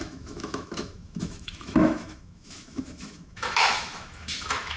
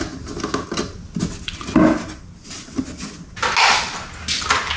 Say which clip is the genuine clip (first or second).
second